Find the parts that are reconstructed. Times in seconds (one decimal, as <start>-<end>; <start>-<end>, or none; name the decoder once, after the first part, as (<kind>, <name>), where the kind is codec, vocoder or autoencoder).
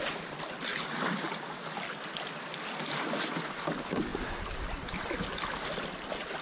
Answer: none